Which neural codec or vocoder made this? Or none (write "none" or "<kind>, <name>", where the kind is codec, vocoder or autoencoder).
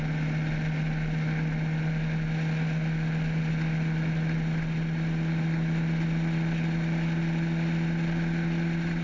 none